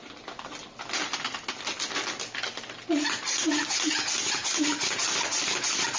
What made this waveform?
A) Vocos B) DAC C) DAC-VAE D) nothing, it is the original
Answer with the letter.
D